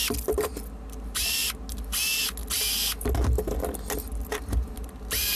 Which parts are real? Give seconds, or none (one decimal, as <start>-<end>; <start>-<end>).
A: 0.0-5.4